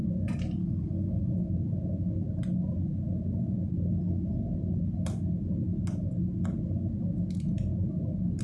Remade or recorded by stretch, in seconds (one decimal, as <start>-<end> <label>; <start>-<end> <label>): 0.0-0.6 recorded; 0.6-1.2 remade; 1.2-8.4 recorded